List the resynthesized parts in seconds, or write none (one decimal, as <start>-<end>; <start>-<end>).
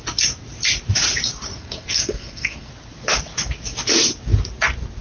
1.5-2.7